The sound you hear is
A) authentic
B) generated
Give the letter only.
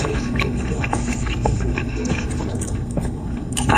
B